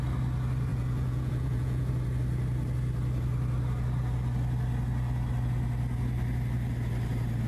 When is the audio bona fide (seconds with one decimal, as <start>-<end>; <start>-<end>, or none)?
0.0-0.7; 1.9-7.5